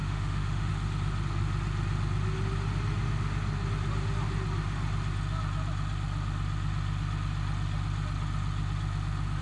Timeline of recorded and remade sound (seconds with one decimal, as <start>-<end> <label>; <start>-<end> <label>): 0.0-0.7 remade; 0.7-9.4 recorded